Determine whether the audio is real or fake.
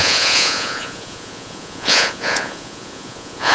fake